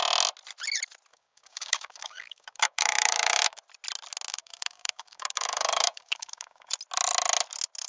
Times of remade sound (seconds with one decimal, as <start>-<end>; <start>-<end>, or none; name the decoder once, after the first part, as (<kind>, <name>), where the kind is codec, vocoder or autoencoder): 1.1-3.6 (codec, DAC); 4.3-6.7